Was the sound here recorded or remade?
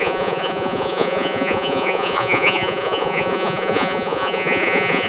remade